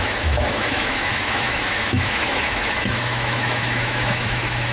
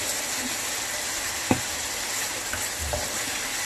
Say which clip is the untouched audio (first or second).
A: second